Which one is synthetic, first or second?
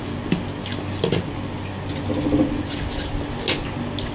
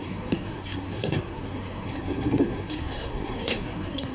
second